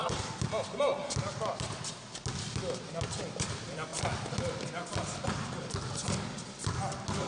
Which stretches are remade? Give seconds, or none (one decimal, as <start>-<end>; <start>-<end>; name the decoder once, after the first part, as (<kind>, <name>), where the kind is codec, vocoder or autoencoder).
none